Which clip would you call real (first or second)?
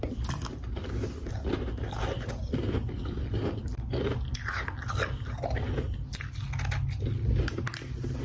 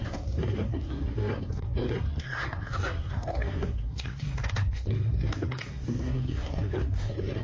first